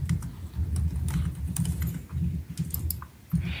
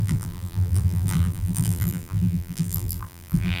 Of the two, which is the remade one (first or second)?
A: second